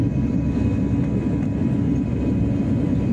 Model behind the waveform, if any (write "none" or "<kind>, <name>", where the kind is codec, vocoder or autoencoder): none